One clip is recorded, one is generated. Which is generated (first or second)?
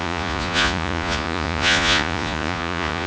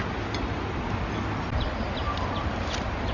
first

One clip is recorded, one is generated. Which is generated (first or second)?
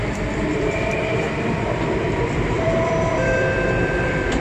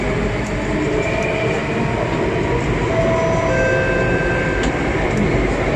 first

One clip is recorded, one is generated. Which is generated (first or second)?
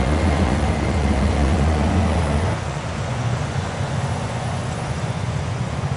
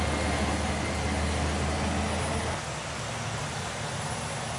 first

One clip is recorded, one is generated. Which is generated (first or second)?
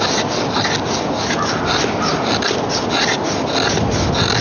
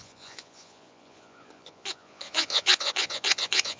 second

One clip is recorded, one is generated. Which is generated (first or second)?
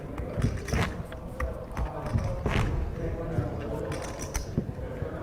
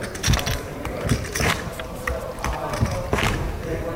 second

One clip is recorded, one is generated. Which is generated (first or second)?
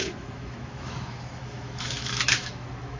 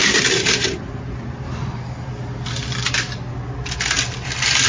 first